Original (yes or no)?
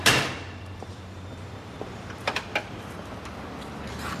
no